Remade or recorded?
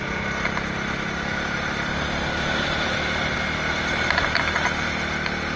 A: recorded